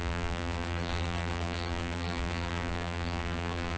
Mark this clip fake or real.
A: fake